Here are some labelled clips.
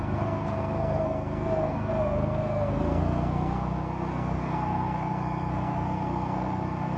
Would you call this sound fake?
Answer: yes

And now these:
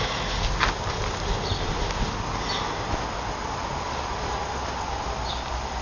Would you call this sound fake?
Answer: no